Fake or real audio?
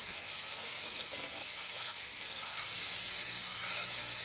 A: fake